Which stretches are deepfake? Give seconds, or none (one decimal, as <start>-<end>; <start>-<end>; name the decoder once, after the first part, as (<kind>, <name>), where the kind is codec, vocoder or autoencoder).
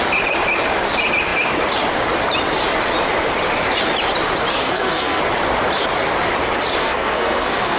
4.5-5.2 (codec, SNAC); 6.8-7.8